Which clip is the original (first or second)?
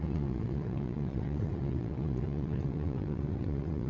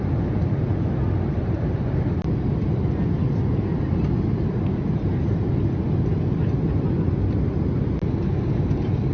second